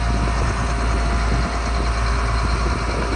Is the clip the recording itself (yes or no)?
yes